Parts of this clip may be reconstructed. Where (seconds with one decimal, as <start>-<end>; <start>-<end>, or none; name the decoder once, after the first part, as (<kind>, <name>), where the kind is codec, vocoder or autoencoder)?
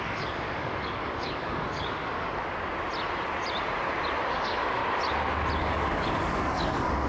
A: 0.0-2.4 (codec, DAC); 4.3-4.8; 5.6-7.1